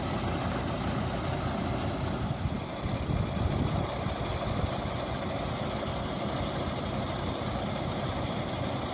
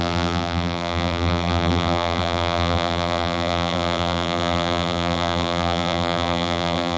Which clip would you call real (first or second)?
first